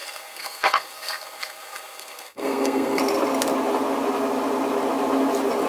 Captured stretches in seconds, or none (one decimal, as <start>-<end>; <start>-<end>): 3.0-5.7